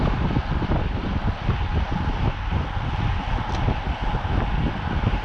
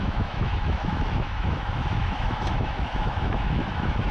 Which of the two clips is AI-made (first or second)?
second